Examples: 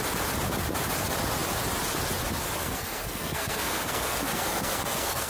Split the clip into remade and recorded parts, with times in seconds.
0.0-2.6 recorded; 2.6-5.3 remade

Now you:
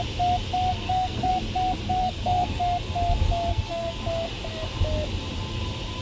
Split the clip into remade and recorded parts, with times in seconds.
0.0-0.7 recorded; 0.7-1.3 remade; 1.3-2.0 recorded; 2.0-2.6 remade; 2.6-3.5 recorded; 3.5-4.0 remade; 4.0-6.0 recorded